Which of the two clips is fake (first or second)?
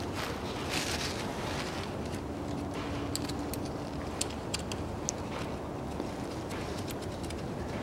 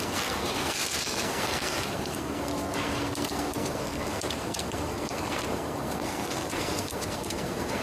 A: second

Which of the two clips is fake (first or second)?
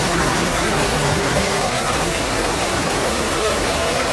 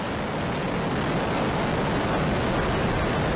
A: first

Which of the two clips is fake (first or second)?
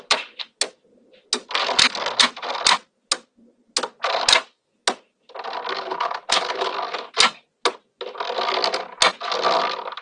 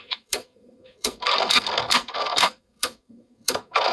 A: second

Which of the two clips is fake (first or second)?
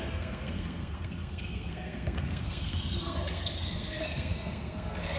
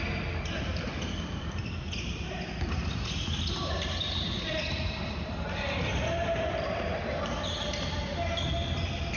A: first